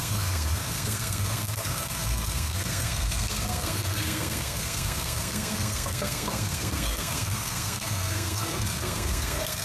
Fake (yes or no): yes